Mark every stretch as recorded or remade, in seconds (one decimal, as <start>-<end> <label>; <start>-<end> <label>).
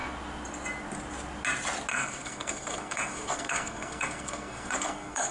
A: 0.0-1.9 recorded; 1.9-5.3 remade